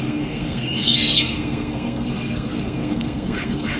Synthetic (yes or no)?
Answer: yes